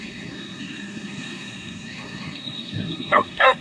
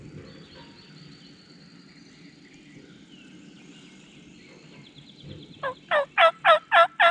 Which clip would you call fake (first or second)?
first